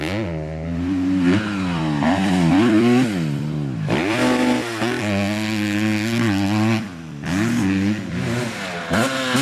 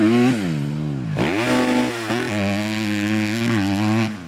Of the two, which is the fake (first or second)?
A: first